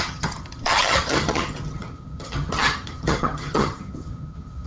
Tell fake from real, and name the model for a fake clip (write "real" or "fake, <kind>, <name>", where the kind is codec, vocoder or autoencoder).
fake, vocoder, HiFi-GAN